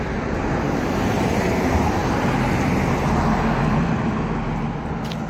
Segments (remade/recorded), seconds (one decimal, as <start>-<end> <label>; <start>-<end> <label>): 0.0-5.3 recorded